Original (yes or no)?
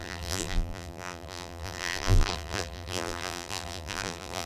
no